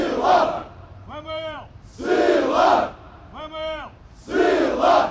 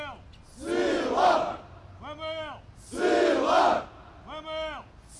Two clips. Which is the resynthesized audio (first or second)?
first